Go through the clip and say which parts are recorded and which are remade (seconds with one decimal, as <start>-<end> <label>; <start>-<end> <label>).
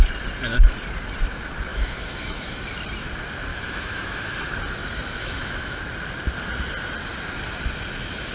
0.0-1.7 recorded; 1.7-2.6 remade; 2.6-3.5 recorded; 3.5-4.5 remade; 4.5-5.2 recorded; 5.2-5.8 remade; 5.8-8.3 recorded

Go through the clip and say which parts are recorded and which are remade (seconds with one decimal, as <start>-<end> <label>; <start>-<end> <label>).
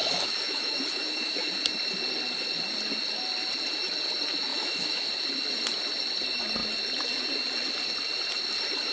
0.0-1.5 remade; 1.5-4.5 recorded; 4.5-5.1 remade; 5.1-8.9 recorded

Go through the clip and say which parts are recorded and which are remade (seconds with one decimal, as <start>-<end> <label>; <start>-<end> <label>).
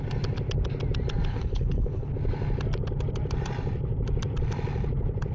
0.0-1.3 recorded; 1.3-2.1 remade; 2.1-5.3 recorded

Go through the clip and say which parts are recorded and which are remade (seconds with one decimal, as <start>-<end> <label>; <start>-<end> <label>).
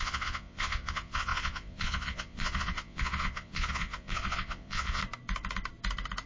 0.0-5.0 remade; 5.0-6.3 recorded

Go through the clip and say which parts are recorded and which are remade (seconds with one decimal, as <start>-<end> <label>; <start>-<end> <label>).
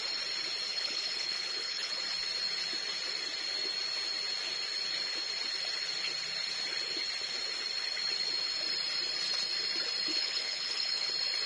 0.0-0.7 recorded; 0.7-2.0 remade; 2.0-10.1 recorded; 10.1-11.1 remade; 11.1-11.5 recorded